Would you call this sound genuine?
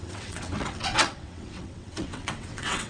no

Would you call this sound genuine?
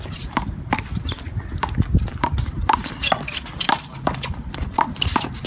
no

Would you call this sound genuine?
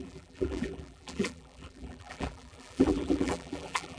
no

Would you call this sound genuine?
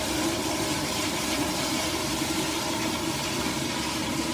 no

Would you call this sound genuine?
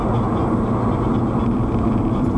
yes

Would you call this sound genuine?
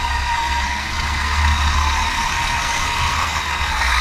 no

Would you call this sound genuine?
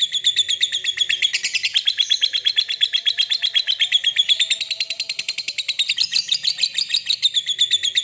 yes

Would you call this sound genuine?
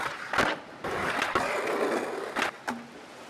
yes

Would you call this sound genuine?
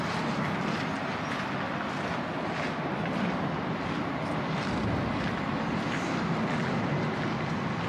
yes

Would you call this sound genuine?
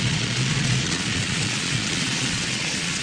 no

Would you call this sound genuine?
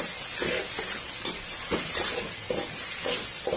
yes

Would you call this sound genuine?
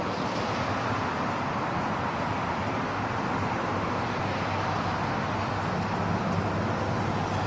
yes